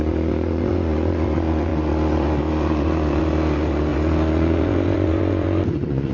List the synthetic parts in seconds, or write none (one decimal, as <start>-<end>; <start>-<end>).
0.0-6.1